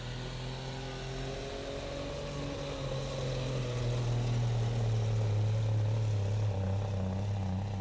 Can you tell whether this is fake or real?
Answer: real